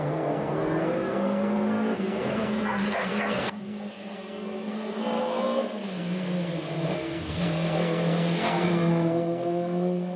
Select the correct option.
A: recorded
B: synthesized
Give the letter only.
B